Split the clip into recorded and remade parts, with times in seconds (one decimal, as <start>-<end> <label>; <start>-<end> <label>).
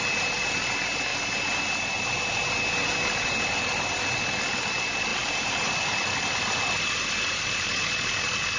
0.0-5.1 recorded; 5.1-5.7 remade; 5.7-8.6 recorded